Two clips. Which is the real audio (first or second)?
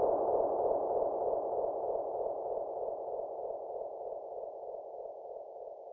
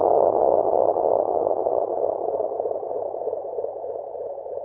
first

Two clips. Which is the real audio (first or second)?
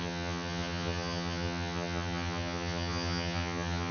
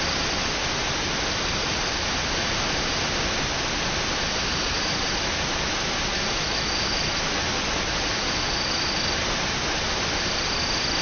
second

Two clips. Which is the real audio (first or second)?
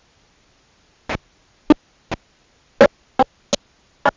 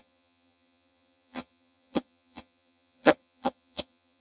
first